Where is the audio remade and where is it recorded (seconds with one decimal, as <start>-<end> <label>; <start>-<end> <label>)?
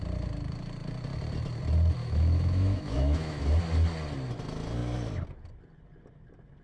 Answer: 0.0-2.0 recorded; 2.0-3.6 remade; 3.6-6.6 recorded